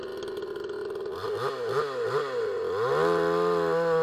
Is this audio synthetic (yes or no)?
no